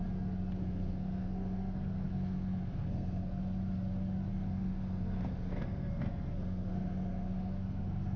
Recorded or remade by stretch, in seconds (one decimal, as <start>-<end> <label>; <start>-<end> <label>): 0.0-0.6 recorded; 0.6-3.4 remade; 3.4-4.3 recorded; 4.3-8.2 remade